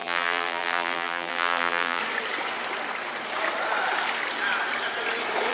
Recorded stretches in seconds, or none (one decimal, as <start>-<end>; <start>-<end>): 2.0-5.5